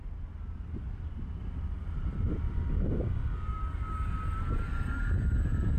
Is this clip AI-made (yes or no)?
no